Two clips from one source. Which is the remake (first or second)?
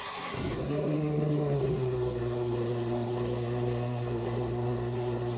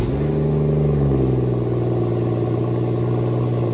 first